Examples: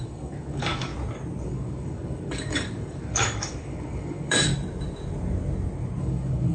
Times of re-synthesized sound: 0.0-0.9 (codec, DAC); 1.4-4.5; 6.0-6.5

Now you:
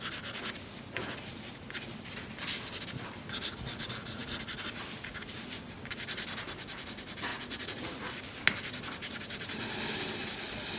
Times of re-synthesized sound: 7.3-8.1 (vocoder, Vocos)